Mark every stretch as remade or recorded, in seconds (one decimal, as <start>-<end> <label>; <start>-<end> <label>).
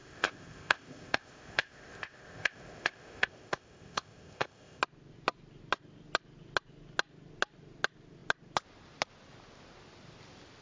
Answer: 0.0-4.8 remade; 4.8-10.6 recorded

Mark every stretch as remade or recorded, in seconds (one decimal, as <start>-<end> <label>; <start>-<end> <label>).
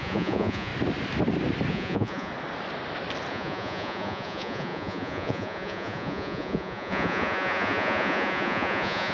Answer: 0.0-0.7 remade; 0.7-1.7 recorded; 1.7-2.3 remade; 2.3-3.3 recorded; 3.3-9.1 remade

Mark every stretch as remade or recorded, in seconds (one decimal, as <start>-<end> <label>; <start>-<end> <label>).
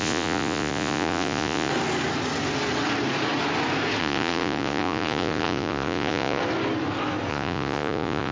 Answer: 0.0-1.7 remade; 1.7-4.0 recorded; 4.0-6.4 remade; 6.4-7.3 recorded; 7.3-8.3 remade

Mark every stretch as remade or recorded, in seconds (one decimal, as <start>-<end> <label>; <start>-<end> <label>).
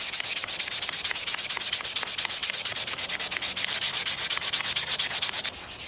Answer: 0.0-5.9 recorded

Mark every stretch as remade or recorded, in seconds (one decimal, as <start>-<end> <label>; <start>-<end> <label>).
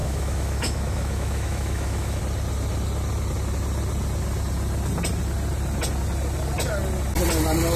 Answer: 0.0-2.2 remade; 2.2-7.8 recorded